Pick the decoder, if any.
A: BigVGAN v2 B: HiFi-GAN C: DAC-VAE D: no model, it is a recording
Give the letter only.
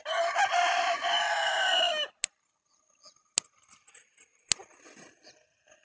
D